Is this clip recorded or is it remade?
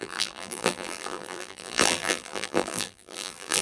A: remade